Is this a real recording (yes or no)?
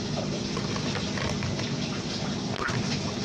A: yes